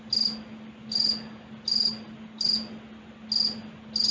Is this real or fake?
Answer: real